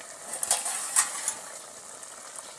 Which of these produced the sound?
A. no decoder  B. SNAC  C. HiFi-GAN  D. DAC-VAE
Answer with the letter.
A